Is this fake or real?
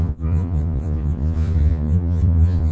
fake